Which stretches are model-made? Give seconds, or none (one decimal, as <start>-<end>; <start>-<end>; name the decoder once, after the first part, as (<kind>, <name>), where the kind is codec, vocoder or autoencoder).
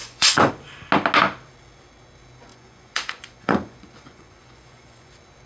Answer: 0.0-0.5 (vocoder, Vocos); 2.5-5.1